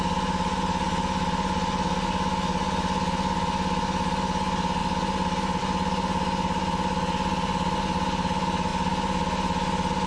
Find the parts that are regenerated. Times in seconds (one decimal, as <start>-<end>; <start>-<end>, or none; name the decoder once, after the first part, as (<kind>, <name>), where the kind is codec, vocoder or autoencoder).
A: none